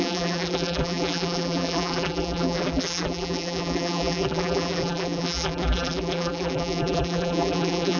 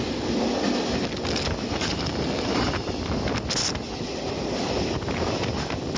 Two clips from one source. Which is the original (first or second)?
second